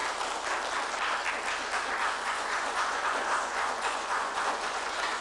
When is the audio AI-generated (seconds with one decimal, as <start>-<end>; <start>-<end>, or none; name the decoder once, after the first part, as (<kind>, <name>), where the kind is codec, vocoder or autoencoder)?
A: 2.0-5.2 (vocoder, Vocos)